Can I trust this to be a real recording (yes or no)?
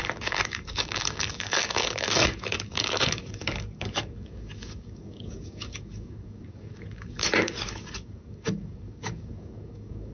no